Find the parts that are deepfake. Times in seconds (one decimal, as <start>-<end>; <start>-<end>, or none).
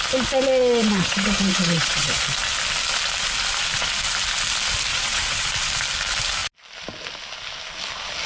0.6-2.2; 4.9-5.5